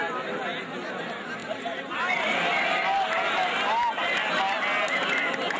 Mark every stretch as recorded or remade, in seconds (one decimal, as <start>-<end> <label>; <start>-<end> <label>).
0.0-5.6 recorded